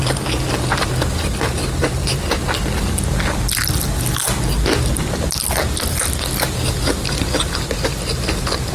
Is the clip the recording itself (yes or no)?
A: yes